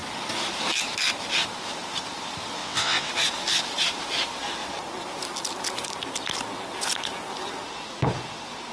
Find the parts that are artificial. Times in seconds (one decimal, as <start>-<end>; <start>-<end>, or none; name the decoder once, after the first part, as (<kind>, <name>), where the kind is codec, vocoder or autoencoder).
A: 2.6-3.1 (vocoder, WaveNeXt)